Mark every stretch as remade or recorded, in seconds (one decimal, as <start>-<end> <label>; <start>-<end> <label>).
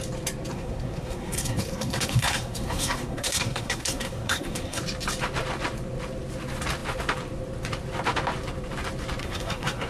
0.0-0.5 recorded; 0.5-4.8 remade; 4.8-9.2 recorded; 9.2-9.9 remade